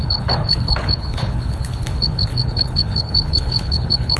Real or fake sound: fake